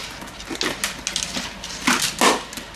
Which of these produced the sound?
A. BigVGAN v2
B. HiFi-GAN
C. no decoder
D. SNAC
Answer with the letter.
C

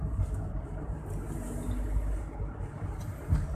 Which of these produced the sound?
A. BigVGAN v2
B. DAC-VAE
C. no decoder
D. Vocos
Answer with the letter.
C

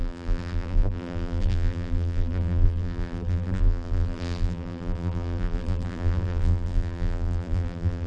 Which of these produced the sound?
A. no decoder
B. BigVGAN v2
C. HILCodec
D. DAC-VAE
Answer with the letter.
B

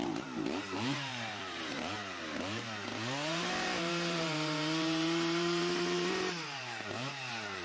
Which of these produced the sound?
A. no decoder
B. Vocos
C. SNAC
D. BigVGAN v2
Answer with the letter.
D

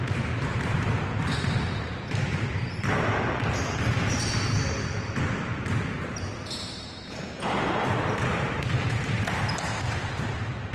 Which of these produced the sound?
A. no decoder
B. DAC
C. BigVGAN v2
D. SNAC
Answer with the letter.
C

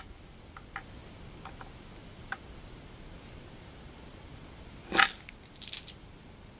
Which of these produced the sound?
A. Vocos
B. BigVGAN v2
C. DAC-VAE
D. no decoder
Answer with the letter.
D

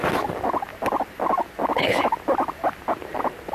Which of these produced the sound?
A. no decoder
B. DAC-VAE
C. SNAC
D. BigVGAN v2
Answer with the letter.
A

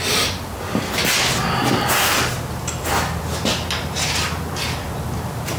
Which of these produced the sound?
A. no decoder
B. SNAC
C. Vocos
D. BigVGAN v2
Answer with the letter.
A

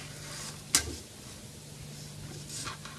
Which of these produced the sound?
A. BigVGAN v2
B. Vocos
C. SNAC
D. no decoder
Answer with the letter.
D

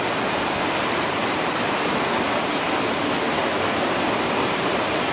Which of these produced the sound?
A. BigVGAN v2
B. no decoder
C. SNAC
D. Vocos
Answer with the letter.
A